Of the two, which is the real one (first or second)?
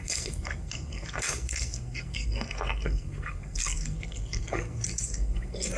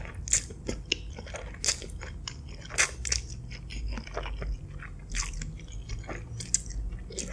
second